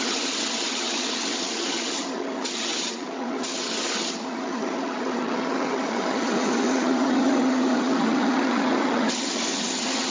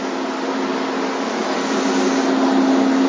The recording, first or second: second